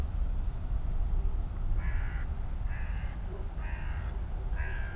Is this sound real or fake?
real